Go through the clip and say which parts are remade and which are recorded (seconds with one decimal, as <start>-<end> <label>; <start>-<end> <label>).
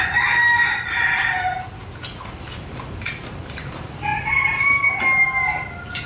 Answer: 0.0-6.0 recorded